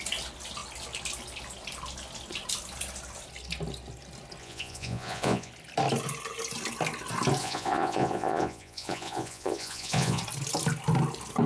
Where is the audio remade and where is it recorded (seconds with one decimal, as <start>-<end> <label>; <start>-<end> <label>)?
0.0-4.4 recorded; 4.4-5.5 remade; 5.5-7.4 recorded; 7.4-10.2 remade; 10.2-11.5 recorded